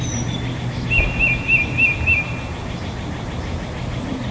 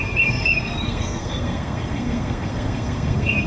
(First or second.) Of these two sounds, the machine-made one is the second